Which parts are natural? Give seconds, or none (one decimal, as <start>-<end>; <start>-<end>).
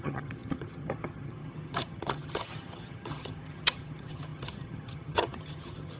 none